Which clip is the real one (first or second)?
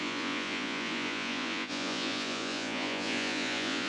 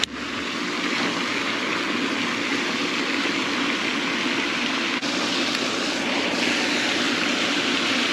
second